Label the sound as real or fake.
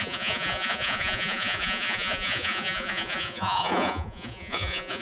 fake